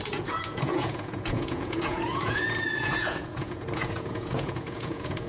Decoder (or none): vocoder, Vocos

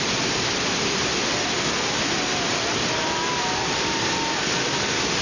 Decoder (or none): none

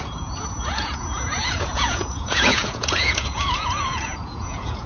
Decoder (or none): vocoder, Vocos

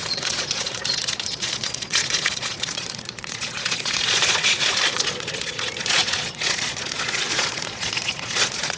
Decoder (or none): vocoder, Vocos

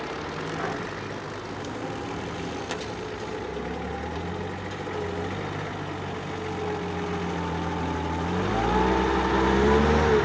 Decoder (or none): none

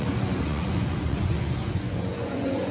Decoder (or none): vocoder, Vocos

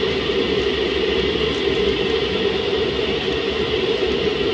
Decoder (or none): none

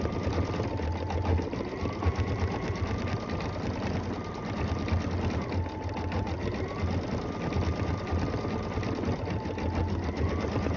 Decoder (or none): none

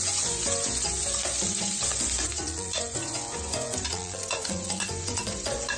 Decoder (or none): vocoder, Vocos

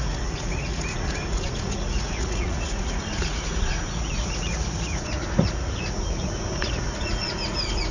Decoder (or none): vocoder, Vocos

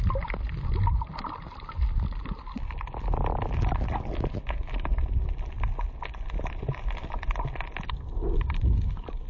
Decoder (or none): none